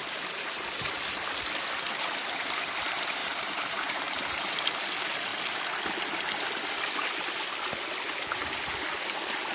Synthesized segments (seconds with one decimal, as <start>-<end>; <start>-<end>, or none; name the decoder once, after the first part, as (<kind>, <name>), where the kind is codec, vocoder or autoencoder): 0.0-0.9 (vocoder, BigVGAN v2); 3.2-4.6